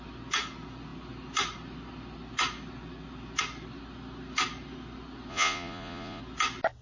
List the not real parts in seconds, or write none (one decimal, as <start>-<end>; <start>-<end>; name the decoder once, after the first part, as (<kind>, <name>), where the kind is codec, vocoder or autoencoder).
5.3-6.2 (vocoder, Vocos)